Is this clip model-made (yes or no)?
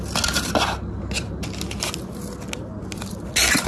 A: no